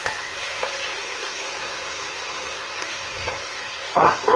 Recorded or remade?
remade